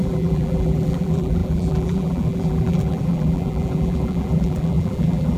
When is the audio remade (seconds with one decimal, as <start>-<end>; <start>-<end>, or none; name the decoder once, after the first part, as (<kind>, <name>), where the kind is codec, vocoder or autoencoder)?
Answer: 0.0-5.4 (vocoder, BigVGAN v2)